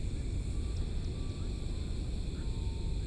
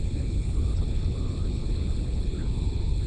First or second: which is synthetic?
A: second